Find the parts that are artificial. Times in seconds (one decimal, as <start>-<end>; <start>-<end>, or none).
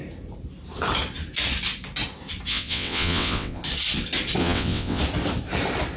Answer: 2.5-3.6; 4.4-5.0